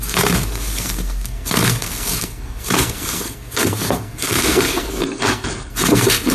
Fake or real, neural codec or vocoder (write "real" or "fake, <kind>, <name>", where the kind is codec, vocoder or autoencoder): fake, codec, SNAC